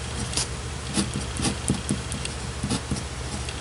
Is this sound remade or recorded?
recorded